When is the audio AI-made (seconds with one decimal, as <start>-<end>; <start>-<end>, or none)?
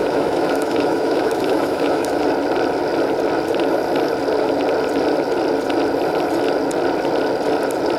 0.0-2.2